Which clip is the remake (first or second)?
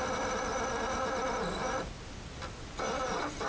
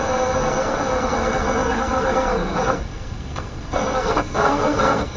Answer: second